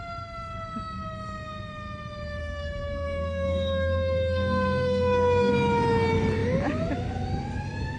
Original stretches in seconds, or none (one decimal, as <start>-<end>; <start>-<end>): 0.0-2.4; 5.5-8.0